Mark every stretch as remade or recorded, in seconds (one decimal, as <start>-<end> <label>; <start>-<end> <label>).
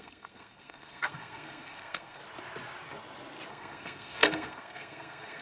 0.0-2.2 remade; 2.2-3.5 recorded; 3.5-5.4 remade